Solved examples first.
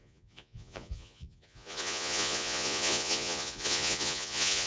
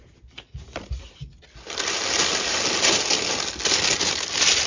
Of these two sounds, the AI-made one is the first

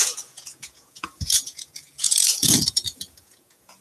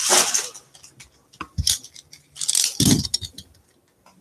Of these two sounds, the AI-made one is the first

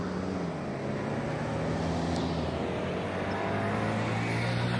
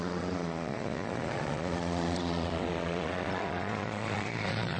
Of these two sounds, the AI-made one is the second